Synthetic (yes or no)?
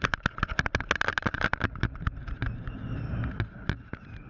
no